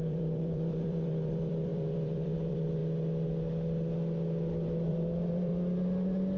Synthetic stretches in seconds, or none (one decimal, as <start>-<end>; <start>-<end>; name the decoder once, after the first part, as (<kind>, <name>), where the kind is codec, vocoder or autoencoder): 0.0-2.8 (vocoder, BigVGAN v2); 4.9-5.5